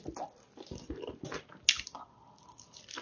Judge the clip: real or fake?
real